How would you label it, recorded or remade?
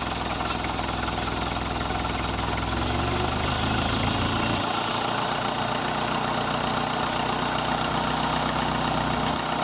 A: recorded